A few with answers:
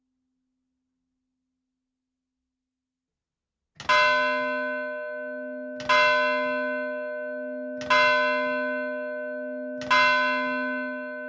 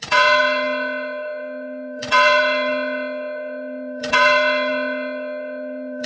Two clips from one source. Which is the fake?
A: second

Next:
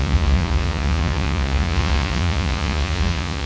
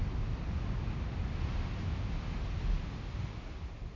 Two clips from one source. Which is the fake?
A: first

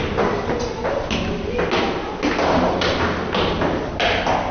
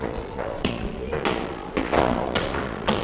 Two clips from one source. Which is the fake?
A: second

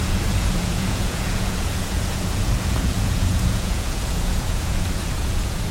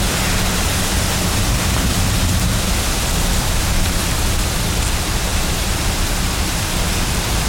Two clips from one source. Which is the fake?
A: first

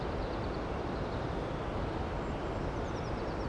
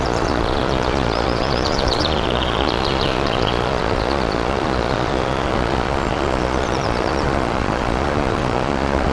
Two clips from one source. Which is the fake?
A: second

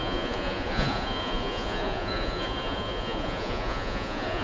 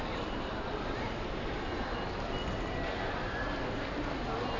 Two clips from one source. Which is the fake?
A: first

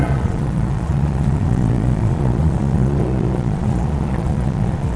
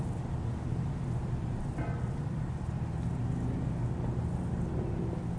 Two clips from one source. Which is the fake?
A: first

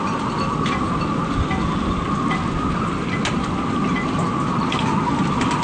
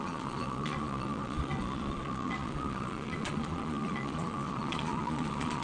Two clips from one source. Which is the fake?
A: second